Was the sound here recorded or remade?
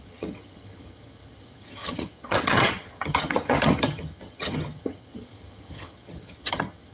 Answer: remade